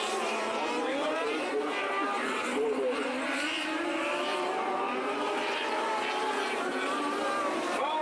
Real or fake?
fake